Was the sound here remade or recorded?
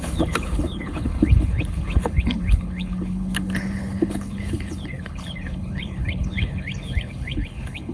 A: remade